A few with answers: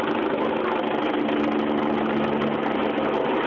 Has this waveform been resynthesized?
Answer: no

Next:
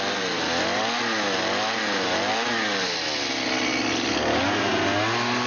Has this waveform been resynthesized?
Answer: no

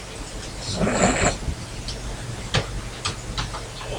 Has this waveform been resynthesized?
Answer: no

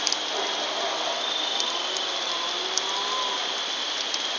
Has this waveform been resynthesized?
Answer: no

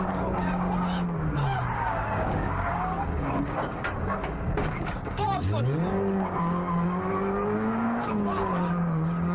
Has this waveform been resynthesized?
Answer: yes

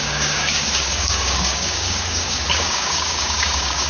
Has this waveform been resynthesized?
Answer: yes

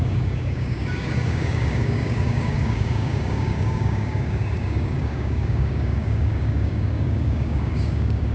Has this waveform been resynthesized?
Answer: yes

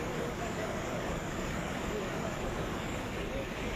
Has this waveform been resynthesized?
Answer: yes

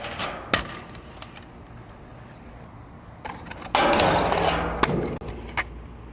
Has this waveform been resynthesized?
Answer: no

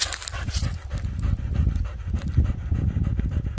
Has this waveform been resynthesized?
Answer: no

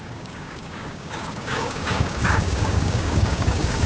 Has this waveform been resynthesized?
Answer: yes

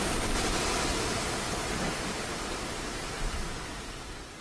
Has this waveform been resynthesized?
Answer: no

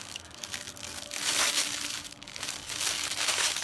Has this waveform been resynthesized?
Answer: yes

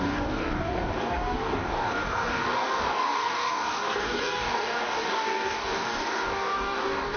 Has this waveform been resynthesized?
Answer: yes